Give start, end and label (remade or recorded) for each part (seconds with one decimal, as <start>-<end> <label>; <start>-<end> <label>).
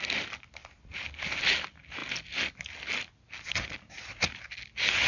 0.0-5.1 recorded